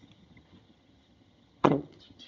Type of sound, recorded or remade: remade